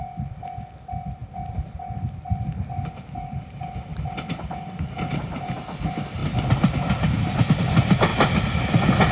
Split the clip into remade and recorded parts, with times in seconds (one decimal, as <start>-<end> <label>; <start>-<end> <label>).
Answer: 0.0-9.1 recorded